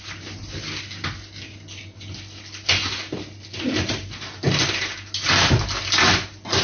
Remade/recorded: recorded